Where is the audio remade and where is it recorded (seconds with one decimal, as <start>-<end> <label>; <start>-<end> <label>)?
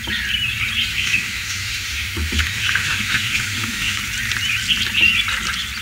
0.0-0.9 recorded; 0.9-4.0 remade; 4.0-5.8 recorded